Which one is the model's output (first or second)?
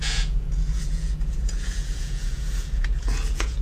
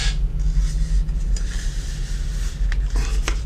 first